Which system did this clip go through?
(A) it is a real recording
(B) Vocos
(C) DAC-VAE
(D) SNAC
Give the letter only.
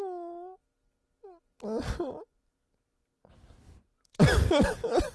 A